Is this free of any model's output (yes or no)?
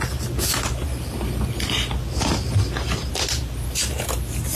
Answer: yes